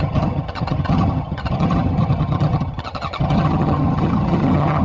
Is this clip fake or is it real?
fake